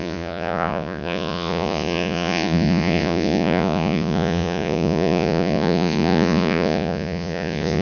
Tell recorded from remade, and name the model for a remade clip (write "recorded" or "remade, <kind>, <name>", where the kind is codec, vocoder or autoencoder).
remade, vocoder, Vocos